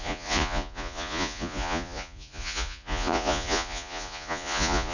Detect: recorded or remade remade